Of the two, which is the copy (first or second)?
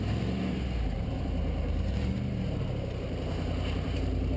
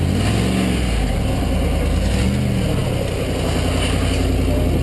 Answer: first